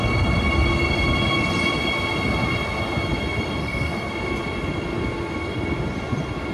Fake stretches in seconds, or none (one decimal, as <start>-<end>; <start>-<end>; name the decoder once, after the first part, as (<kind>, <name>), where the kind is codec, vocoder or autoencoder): 3.6-4.1 (codec, SNAC)